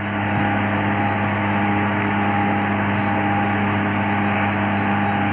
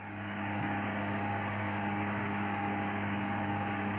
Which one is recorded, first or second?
first